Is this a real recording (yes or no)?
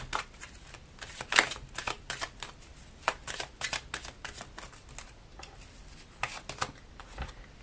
yes